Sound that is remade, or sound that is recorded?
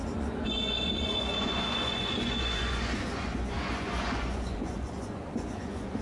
remade